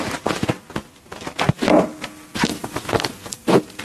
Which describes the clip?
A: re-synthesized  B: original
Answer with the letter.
B